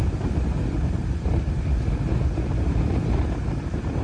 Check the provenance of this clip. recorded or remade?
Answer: recorded